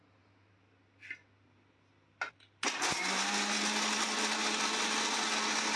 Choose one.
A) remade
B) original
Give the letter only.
B